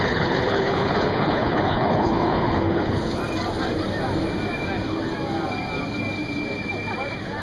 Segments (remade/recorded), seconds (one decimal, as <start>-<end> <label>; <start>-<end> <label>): 0.0-3.2 remade; 3.2-7.4 recorded